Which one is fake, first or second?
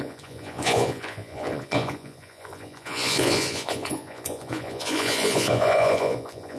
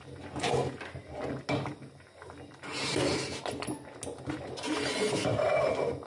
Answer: first